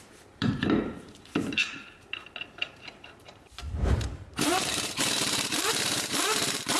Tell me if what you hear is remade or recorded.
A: remade